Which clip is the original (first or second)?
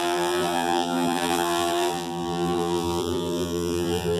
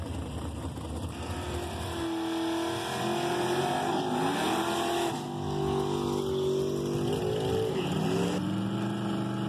second